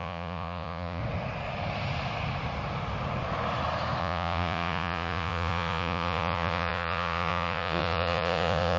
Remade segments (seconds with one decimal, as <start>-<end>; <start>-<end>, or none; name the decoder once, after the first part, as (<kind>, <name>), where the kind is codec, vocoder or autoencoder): 0.0-1.0 (vocoder, Vocos); 4.0-8.8